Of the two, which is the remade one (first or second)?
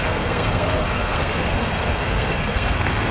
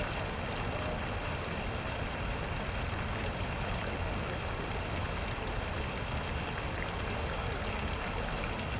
first